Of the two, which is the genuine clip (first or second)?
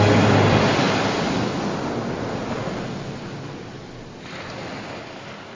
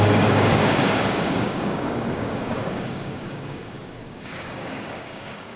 first